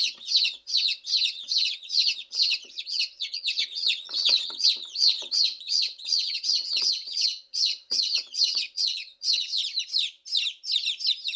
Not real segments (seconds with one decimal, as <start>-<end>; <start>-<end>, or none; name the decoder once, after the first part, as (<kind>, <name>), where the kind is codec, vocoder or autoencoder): 0.0-9.6 (vocoder, WaveNeXt)